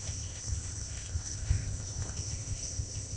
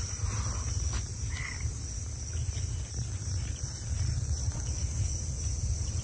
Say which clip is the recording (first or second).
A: second